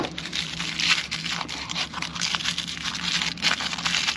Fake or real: real